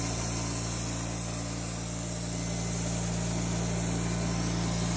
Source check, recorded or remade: recorded